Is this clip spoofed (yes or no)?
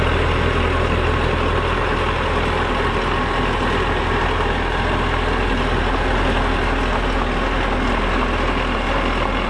no